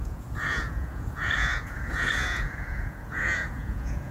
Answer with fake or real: fake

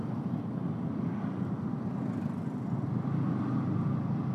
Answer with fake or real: real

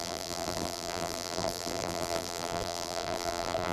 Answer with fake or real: fake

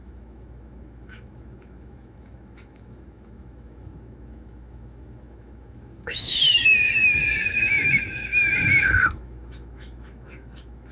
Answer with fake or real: fake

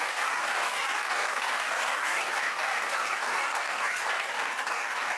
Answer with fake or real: fake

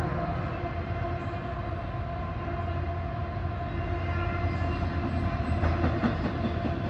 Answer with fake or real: real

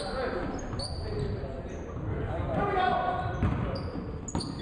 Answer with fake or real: real